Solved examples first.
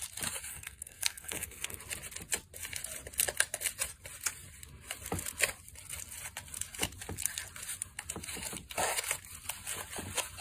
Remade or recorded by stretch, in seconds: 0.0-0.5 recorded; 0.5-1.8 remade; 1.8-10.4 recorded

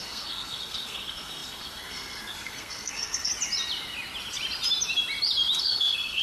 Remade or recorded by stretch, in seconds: 0.0-3.3 remade; 3.3-5.6 recorded; 5.6-6.2 remade

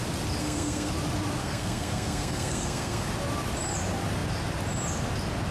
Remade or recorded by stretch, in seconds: 0.0-0.4 recorded; 0.4-0.9 remade; 0.9-1.4 recorded; 1.4-3.1 remade; 3.1-5.5 recorded

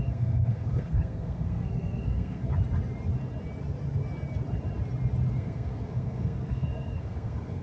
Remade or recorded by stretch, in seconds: 0.0-2.5 remade; 2.5-5.3 recorded; 5.3-7.6 remade

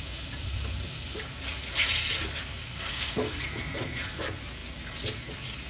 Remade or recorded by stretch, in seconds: 0.0-2.6 recorded; 2.6-3.4 remade; 3.4-5.7 recorded

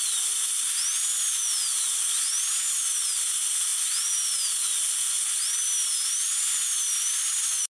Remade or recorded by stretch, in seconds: 0.0-7.8 recorded

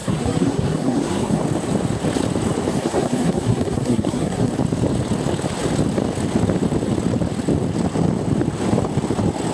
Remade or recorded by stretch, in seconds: 0.0-1.4 remade; 1.4-2.8 recorded; 2.8-4.5 remade; 4.5-9.5 recorded

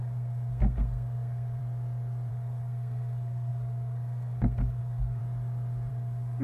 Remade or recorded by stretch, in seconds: 0.0-1.6 remade; 1.6-2.3 recorded; 2.3-5.2 remade; 5.2-5.9 recorded; 5.9-6.4 remade